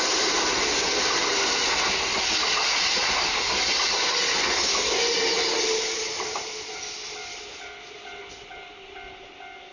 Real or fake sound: real